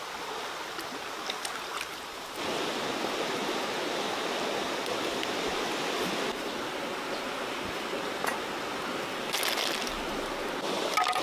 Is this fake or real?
real